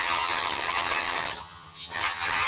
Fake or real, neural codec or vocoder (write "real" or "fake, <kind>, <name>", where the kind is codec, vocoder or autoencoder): fake, vocoder, HiFi-GAN